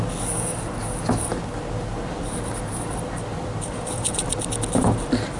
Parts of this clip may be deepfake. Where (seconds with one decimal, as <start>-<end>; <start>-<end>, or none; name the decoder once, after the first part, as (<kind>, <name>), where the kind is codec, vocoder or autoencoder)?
1.3-4.5 (vocoder, BigVGAN v2)